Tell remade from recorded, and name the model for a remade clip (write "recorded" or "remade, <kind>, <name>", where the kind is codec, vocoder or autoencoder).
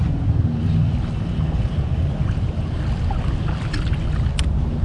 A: recorded